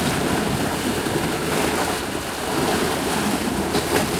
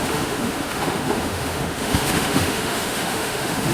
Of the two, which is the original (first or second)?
first